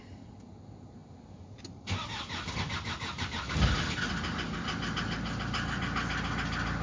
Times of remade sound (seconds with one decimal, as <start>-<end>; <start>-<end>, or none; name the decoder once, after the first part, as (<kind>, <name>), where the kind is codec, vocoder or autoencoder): none

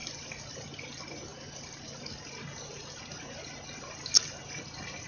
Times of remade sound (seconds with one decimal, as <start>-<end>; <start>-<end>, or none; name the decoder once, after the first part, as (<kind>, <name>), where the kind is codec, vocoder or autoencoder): none

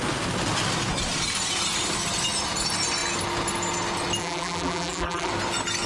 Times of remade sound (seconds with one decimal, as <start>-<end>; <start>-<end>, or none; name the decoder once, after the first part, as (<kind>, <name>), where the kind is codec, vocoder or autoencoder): 4.2-5.3 (vocoder, BigVGAN v2)